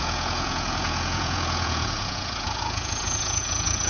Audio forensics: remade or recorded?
remade